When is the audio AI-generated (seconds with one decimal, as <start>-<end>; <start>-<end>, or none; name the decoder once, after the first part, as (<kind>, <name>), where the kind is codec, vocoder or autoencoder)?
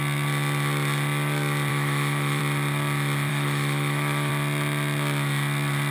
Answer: 1.7-2.4 (autoencoder, DAC-VAE); 3.3-4.3